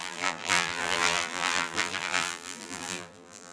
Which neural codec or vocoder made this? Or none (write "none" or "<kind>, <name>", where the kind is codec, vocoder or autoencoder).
vocoder, BigVGAN v2